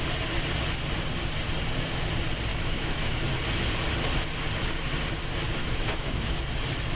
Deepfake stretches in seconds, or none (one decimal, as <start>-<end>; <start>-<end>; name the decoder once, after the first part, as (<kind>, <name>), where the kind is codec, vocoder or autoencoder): 2.5-3.2 (autoencoder, DAC-VAE); 5.6-6.4